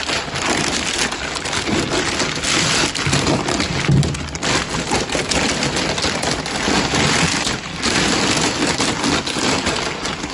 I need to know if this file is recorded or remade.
recorded